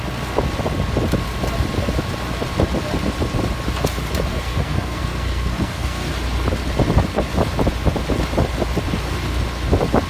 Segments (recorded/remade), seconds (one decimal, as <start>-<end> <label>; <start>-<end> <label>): 0.0-4.3 recorded; 4.3-6.1 remade; 6.1-10.1 recorded